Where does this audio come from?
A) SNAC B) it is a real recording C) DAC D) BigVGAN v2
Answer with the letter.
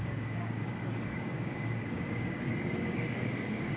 C